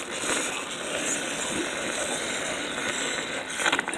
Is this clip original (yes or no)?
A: yes